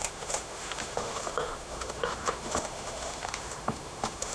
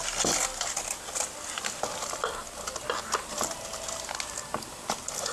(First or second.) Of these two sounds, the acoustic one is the second